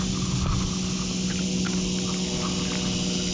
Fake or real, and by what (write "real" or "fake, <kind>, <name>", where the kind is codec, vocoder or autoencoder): real